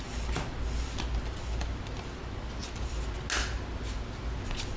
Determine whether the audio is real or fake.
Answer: real